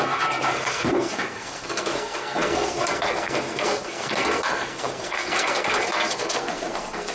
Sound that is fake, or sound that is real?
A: fake